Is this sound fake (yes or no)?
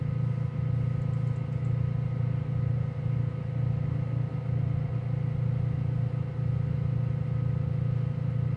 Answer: no